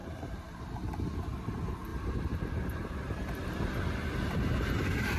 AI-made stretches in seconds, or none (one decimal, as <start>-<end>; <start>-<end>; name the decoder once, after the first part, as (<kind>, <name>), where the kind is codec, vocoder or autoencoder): 0.0-0.6 (vocoder, BigVGAN v2); 1.9-5.2